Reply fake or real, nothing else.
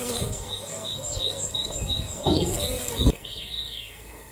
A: fake